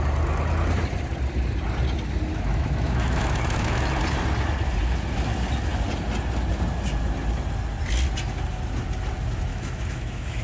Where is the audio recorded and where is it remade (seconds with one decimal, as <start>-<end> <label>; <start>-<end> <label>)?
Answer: 0.0-2.3 recorded; 2.3-3.9 remade; 3.9-9.5 recorded; 9.5-10.4 remade